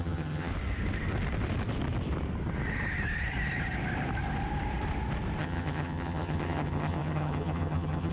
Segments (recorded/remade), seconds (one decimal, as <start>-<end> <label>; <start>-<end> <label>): 0.0-0.5 remade; 0.5-5.4 recorded; 5.4-8.1 remade